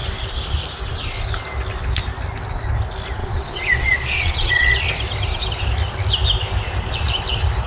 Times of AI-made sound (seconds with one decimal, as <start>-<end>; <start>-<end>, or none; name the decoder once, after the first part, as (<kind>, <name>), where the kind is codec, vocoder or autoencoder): 3.2-4.8 (vocoder, Vocos)